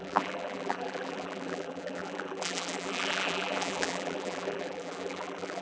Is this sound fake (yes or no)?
yes